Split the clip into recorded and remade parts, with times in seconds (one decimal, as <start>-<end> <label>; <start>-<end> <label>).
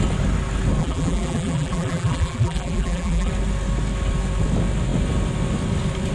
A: 0.0-0.8 recorded; 0.8-3.3 remade; 3.3-6.1 recorded